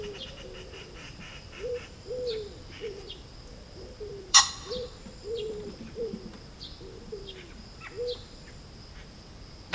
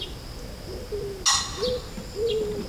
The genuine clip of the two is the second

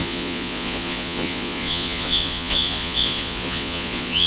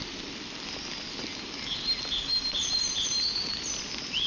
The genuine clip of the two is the second